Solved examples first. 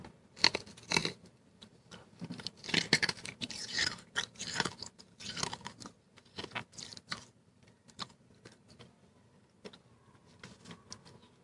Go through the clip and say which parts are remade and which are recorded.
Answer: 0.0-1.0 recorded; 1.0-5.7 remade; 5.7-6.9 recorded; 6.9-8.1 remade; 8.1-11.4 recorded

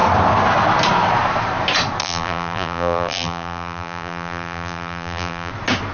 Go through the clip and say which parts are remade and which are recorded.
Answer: 0.0-2.0 recorded; 2.0-5.5 remade; 5.5-5.9 recorded

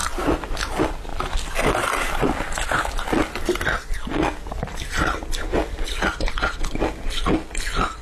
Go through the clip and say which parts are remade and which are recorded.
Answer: 0.0-1.1 recorded; 1.1-2.4 remade; 2.4-8.0 recorded

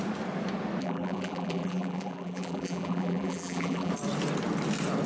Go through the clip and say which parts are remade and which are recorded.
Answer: 0.0-0.8 recorded; 0.8-3.9 remade; 3.9-5.1 recorded